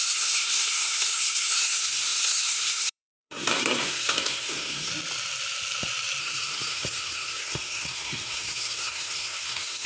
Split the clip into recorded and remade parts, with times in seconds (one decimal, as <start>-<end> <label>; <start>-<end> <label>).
0.0-4.9 remade; 4.9-6.2 recorded; 6.2-9.9 remade

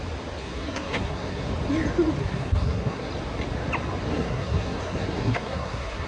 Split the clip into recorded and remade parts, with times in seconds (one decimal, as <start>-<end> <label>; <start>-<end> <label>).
0.0-0.4 recorded; 0.4-1.5 remade; 1.5-2.2 recorded; 2.2-3.1 remade; 3.1-4.1 recorded; 4.1-6.1 remade

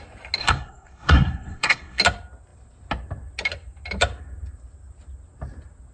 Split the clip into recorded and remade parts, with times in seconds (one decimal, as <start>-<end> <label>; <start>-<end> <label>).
0.0-0.4 recorded; 0.4-2.0 remade; 2.0-5.9 recorded

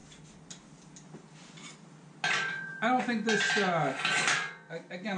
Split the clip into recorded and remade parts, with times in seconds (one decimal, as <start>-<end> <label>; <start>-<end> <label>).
0.0-5.2 recorded

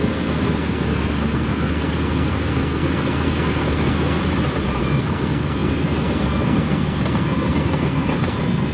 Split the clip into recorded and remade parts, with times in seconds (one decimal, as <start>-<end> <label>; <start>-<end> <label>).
0.0-4.2 remade; 4.2-4.8 recorded; 4.8-8.7 remade

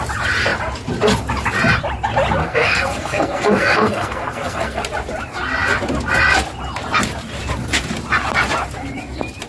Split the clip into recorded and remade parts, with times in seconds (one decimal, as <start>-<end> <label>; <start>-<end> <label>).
0.0-2.4 recorded; 2.4-4.8 remade; 4.8-9.5 recorded

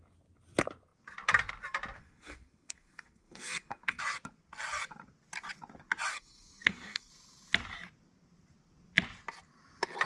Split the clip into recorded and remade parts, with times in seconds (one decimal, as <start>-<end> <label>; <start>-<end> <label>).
0.0-2.0 recorded; 2.0-4.0 remade; 4.0-6.1 recorded; 6.1-7.1 remade; 7.1-10.1 recorded

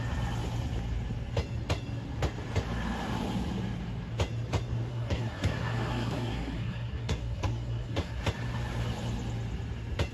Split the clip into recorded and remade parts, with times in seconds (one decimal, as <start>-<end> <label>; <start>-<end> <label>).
0.0-4.9 recorded; 4.9-8.2 remade; 8.2-10.1 recorded